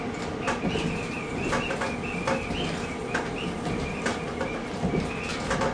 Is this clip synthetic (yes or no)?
no